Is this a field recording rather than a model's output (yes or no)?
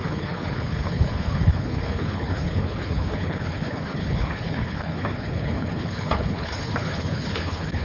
no